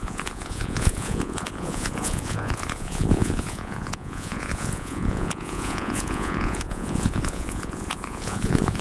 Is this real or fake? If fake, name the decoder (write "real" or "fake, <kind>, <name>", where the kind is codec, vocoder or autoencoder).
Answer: fake, vocoder, Vocos